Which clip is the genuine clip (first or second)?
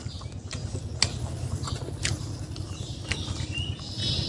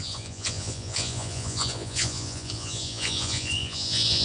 first